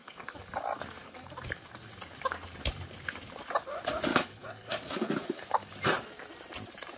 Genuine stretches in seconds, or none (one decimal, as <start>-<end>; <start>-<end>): 0.6-1.0; 1.6-4.1; 5.7-7.0